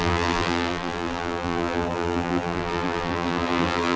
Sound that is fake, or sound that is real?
fake